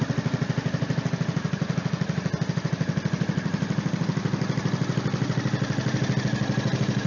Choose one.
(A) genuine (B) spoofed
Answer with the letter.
A